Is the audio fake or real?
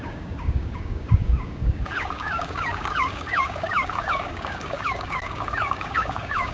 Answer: fake